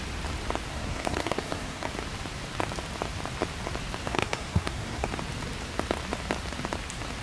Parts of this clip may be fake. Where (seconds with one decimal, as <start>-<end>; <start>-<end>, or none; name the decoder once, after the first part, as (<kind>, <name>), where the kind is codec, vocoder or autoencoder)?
0.7-1.9 (codec, SNAC); 4.0-5.1